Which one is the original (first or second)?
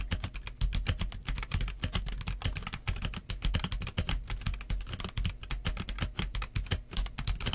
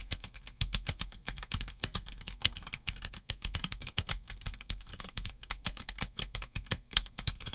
first